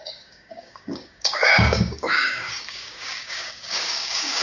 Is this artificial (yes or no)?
yes